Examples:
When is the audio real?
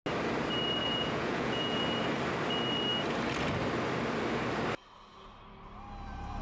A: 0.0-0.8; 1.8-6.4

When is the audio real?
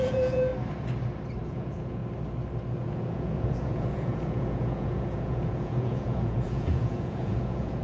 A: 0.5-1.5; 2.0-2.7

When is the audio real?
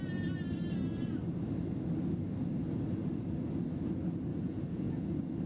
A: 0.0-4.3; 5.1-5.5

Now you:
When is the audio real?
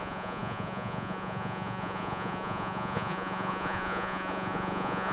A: none